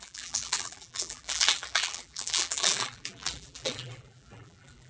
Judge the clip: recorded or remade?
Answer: remade